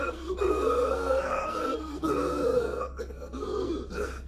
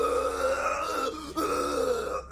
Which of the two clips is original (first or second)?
second